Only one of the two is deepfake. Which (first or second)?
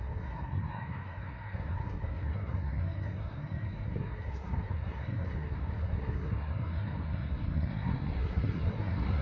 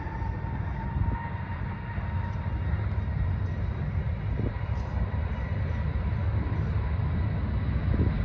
first